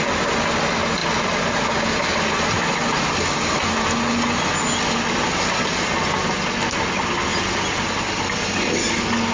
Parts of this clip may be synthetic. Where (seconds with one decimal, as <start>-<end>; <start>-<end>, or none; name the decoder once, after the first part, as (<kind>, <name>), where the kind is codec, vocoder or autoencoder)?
none